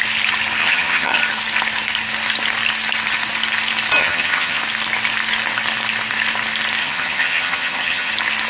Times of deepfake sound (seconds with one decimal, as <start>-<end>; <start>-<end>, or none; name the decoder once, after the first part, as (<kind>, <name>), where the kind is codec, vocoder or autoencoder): 0.6-1.2 (vocoder, HiFi-GAN); 4.0-4.6; 6.8-8.1